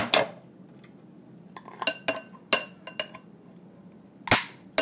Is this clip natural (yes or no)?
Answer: yes